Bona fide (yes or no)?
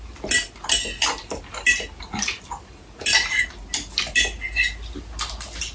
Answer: yes